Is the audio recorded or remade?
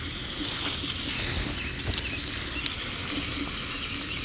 recorded